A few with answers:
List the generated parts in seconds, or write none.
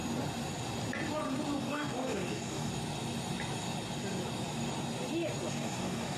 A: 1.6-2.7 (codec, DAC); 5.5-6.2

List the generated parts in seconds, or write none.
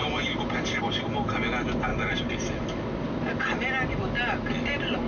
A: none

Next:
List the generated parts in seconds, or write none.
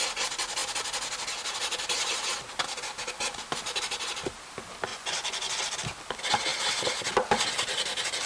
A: 4.9-5.6 (vocoder, Vocos)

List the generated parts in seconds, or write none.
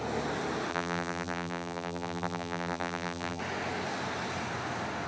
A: 0.7-3.4 (vocoder, BigVGAN v2)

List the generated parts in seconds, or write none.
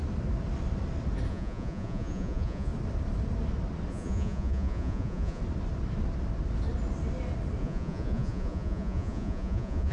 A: 1.3-2.7 (vocoder, Vocos); 3.9-5.4; 7.6-9.9